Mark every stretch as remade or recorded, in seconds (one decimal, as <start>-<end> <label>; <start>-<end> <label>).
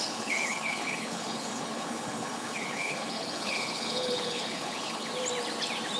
0.0-5.1 remade; 5.1-6.0 recorded